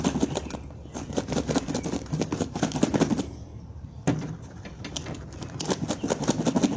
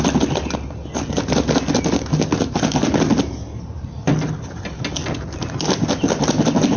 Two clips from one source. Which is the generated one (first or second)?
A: first